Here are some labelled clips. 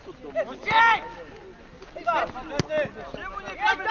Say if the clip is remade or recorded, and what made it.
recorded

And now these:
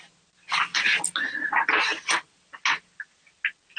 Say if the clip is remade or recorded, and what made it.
recorded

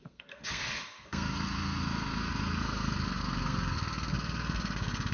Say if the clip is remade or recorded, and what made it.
remade, codec, SNAC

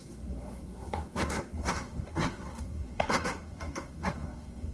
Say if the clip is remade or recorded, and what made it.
remade, codec, SNAC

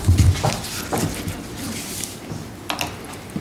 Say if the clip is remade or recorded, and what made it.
recorded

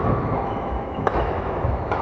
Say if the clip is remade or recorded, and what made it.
remade, autoencoder, DAC-VAE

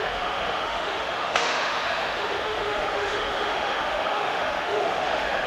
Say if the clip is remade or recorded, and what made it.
remade, autoencoder, DAC-VAE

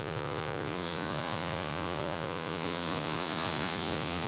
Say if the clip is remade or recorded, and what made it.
remade, vocoder, Vocos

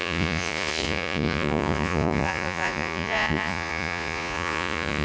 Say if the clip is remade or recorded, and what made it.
remade, vocoder, Vocos